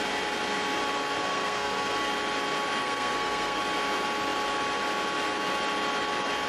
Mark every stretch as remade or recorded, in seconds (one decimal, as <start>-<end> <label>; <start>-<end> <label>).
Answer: 0.0-1.2 recorded; 1.2-2.1 remade; 2.1-2.8 recorded; 2.8-3.6 remade; 3.6-6.5 recorded